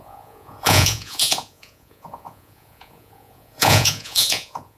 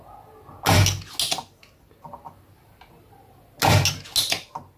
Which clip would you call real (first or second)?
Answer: second